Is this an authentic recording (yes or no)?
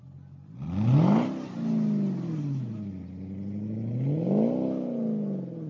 yes